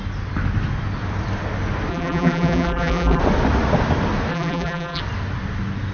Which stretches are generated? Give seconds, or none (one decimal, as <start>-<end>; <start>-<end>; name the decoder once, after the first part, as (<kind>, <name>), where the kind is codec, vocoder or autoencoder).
1.9-3.2 (vocoder, BigVGAN v2); 4.3-5.0